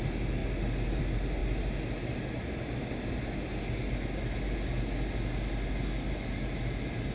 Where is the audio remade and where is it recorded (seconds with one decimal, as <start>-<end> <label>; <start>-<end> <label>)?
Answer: 0.0-7.1 recorded